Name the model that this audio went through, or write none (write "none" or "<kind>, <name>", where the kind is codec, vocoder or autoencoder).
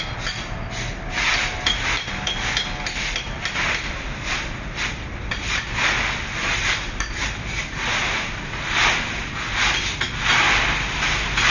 none